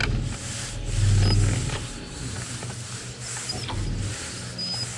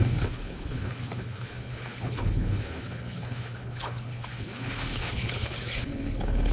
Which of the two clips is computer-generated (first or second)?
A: second